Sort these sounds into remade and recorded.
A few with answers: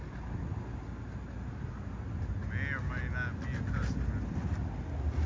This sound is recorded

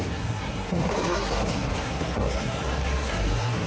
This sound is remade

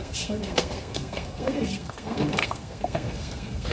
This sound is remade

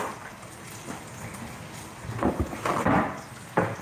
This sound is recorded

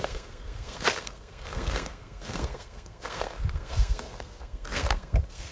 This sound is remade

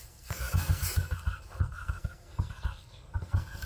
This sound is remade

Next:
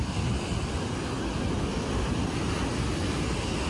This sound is recorded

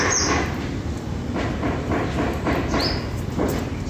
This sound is recorded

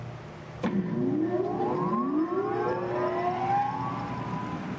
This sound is recorded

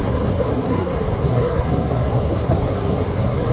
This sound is remade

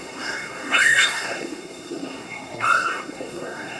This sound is remade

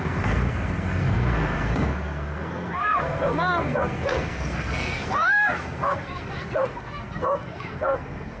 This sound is remade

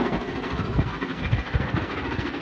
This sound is remade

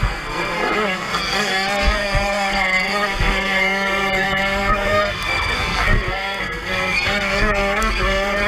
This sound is remade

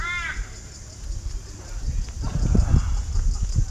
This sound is recorded